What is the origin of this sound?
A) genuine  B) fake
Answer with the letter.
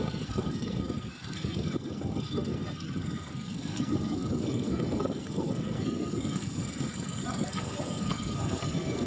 B